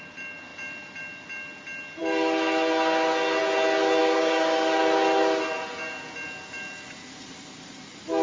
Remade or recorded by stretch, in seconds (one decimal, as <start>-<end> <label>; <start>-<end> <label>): 0.0-4.0 recorded; 4.0-4.8 remade; 4.8-8.2 recorded